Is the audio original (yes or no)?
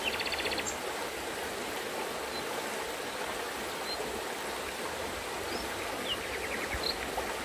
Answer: yes